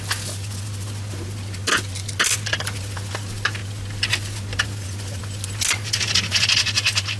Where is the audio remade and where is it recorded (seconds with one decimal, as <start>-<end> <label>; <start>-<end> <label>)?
0.0-7.2 recorded